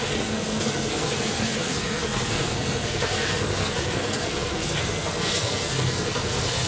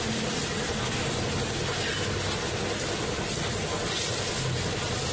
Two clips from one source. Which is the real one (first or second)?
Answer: second